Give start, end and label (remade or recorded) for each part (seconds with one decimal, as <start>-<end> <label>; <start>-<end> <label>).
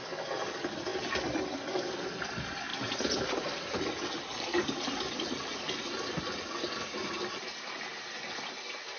0.0-9.0 recorded